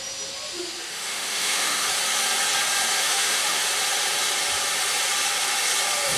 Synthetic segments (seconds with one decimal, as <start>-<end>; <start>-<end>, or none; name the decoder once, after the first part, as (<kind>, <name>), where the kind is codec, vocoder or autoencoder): 0.9-1.9 (autoencoder, DAC-VAE); 3.0-3.6